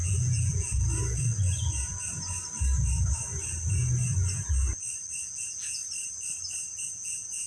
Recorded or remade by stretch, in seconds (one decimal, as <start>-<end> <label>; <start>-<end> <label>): 0.0-0.7 remade; 0.7-5.2 recorded; 5.2-5.8 remade; 5.8-6.8 recorded; 6.8-7.5 remade